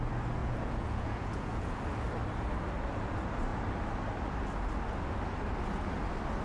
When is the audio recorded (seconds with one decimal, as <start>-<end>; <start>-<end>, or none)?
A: 0.0-0.4; 1.8-6.4